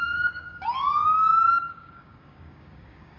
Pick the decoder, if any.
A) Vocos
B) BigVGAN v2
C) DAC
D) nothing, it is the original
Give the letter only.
C